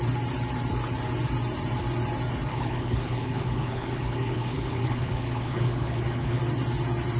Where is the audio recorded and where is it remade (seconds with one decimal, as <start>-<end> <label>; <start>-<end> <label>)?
0.0-2.5 recorded; 2.5-6.4 remade; 6.4-7.2 recorded